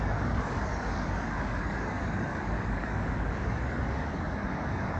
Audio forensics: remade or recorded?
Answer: remade